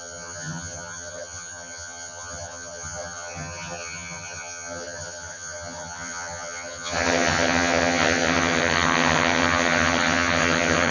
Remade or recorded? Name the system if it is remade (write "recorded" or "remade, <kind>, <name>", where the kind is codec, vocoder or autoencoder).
remade, vocoder, HiFi-GAN